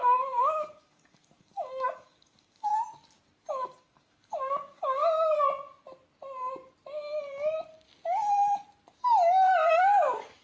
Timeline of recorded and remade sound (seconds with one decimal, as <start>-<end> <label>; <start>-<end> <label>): 0.0-2.7 remade; 2.7-3.5 recorded; 3.5-5.0 remade; 5.0-9.7 recorded; 9.7-10.4 remade